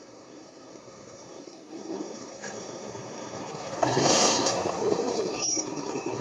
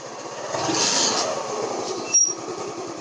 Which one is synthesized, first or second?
first